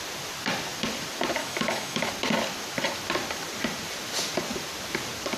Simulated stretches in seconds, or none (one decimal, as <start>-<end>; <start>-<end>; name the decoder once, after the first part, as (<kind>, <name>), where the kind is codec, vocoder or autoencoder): 1.4-2.1 (autoencoder, DAC-VAE)